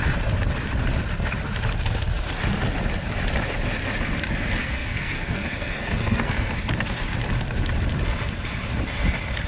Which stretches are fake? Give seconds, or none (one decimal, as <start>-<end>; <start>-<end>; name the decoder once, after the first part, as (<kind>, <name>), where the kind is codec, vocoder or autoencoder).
4.6-6.5 (codec, SNAC)